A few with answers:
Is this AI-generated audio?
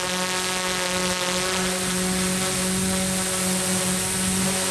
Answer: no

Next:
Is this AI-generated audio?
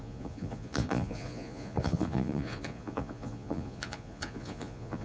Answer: yes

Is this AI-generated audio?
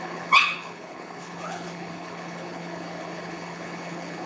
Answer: yes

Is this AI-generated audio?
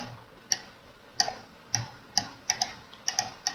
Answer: no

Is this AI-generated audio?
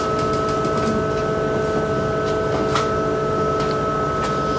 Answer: no